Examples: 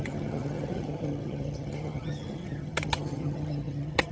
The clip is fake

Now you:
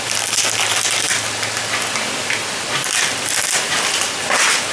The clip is real